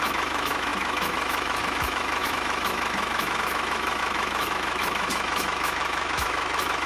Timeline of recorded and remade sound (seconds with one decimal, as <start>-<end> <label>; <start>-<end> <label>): 0.0-6.9 remade